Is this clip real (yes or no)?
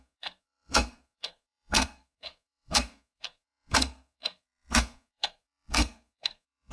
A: no